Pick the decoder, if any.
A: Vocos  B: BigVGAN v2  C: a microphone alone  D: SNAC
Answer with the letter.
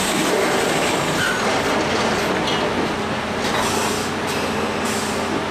C